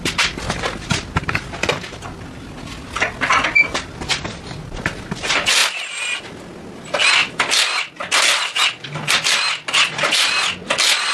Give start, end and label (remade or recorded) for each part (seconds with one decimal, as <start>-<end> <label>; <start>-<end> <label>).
0.0-11.1 recorded